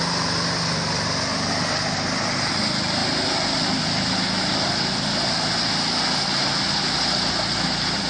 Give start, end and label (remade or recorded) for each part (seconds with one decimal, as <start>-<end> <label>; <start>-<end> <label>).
0.0-8.1 recorded